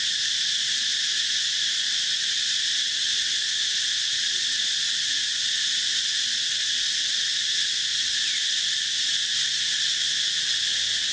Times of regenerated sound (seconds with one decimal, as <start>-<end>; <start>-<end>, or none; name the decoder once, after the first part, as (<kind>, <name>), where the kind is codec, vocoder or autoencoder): none